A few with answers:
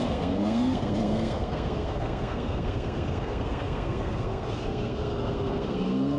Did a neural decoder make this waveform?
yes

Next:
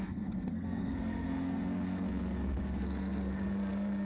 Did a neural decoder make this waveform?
yes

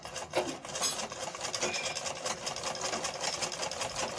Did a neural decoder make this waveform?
no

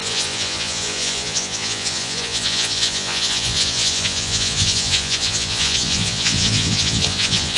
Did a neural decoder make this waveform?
yes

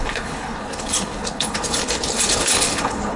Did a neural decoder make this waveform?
yes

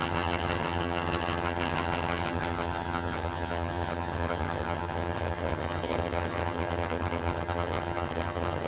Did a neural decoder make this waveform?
yes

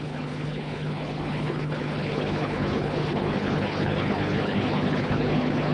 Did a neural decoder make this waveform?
yes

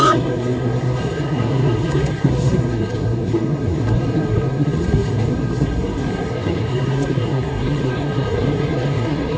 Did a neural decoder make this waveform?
yes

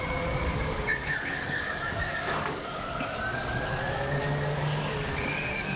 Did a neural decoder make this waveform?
yes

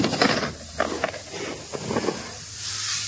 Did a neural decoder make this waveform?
no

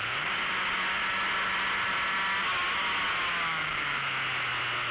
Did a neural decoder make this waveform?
no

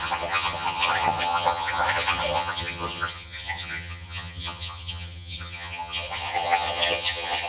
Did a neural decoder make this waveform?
yes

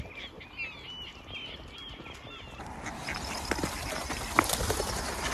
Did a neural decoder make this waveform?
no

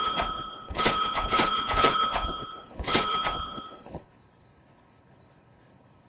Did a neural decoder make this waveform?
yes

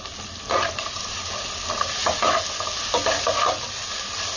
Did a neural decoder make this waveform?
no